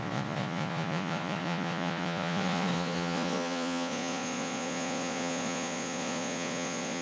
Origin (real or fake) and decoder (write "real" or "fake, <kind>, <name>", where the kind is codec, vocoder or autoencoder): fake, vocoder, Vocos